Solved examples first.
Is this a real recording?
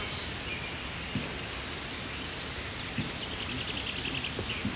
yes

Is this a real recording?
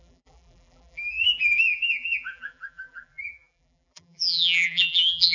no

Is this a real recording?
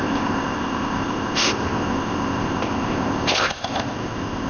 no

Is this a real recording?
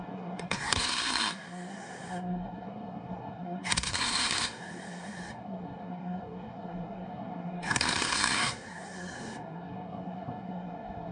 no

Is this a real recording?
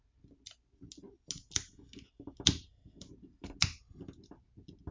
yes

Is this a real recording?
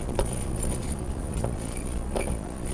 no